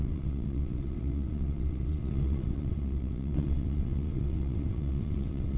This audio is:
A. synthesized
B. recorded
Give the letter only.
A